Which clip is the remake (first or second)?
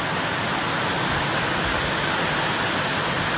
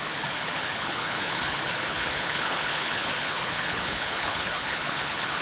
second